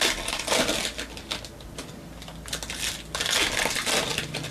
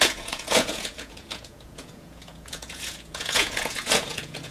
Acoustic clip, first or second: first